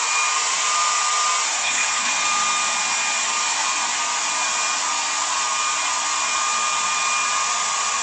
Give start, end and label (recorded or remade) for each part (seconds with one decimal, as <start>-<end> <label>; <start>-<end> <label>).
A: 0.0-1.6 recorded; 1.6-2.1 remade; 2.1-8.0 recorded